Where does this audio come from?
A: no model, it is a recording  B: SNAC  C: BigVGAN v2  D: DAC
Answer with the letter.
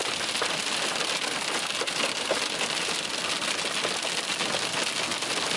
A